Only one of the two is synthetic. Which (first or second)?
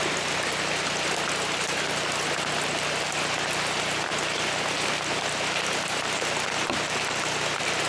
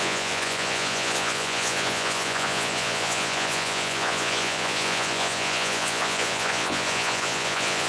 second